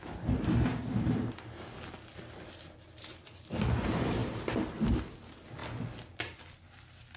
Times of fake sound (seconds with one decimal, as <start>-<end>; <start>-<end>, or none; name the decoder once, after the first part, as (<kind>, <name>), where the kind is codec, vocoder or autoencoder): none